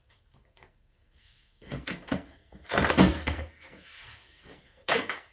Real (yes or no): no